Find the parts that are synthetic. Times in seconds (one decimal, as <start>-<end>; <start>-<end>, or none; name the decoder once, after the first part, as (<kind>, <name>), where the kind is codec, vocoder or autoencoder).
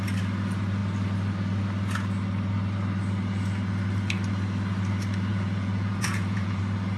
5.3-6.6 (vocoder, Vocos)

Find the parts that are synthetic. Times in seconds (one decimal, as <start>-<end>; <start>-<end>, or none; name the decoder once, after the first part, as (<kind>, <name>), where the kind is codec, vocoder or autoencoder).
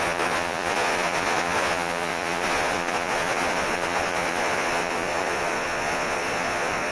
0.0-6.9 (vocoder, Vocos)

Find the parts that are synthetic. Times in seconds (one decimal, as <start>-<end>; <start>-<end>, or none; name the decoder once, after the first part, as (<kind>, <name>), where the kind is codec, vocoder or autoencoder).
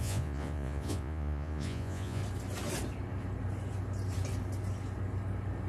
0.0-2.2 (vocoder, Vocos)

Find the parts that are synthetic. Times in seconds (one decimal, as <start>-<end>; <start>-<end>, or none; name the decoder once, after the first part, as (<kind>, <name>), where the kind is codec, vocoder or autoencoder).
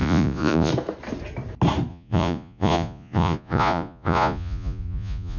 0.0-0.7 (vocoder, Vocos); 1.9-5.4